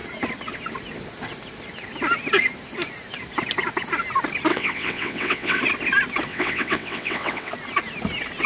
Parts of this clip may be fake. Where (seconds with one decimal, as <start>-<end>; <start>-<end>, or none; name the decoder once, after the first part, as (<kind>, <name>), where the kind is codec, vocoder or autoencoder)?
4.5-5.6 (vocoder, WaveNeXt); 6.3-7.5